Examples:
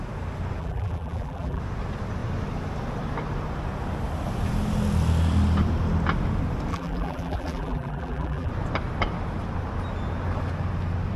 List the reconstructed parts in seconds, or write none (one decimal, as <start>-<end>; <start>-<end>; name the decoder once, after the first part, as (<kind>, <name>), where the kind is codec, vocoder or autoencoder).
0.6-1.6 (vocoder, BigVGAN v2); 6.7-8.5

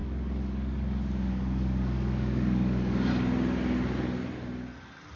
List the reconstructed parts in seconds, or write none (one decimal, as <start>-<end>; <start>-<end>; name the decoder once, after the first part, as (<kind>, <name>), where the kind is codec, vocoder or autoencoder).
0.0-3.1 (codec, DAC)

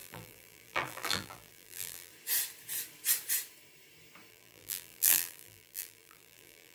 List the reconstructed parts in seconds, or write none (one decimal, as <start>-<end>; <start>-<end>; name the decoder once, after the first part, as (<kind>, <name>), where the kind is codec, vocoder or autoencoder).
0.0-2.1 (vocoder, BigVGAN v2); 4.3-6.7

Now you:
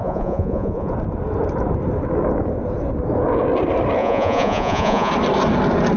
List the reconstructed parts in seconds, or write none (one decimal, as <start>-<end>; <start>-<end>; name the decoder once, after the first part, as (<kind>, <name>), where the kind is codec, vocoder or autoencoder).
0.0-0.9 (vocoder, Vocos); 4.0-5.1